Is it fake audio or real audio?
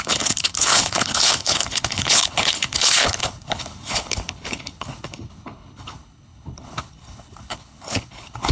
fake